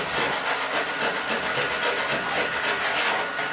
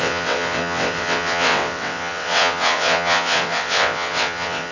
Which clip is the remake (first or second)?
second